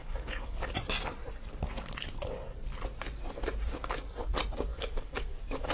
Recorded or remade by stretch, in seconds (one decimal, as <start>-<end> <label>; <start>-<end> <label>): 0.0-0.7 remade; 0.7-4.7 recorded; 4.7-5.7 remade